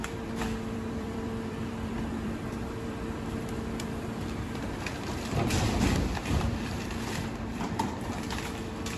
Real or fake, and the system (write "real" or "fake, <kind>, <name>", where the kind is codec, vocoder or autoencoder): fake, vocoder, BigVGAN v2